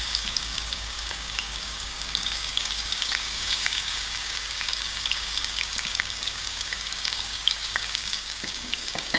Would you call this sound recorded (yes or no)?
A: no